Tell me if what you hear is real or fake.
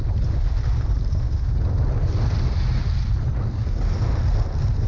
real